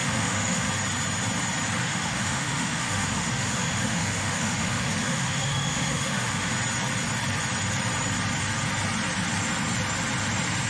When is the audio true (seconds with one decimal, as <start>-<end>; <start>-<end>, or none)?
0.7-1.8; 6.5-10.7